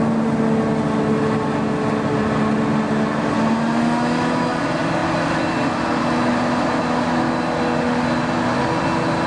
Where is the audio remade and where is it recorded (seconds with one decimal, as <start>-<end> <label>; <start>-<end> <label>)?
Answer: 0.0-9.3 recorded